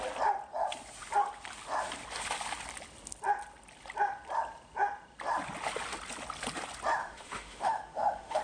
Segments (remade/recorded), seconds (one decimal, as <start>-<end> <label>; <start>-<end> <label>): 0.0-7.0 recorded; 7.0-8.4 remade